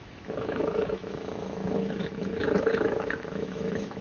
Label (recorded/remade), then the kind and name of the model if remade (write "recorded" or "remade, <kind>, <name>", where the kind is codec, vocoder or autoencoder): remade, autoencoder, DAC-VAE